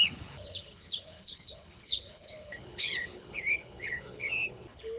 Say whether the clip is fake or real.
fake